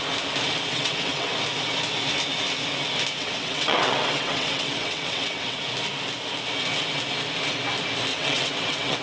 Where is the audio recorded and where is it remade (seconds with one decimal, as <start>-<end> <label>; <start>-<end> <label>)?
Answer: 0.0-0.7 recorded; 0.7-1.3 remade; 1.3-3.2 recorded; 3.2-5.6 remade; 5.6-8.1 recorded; 8.1-9.0 remade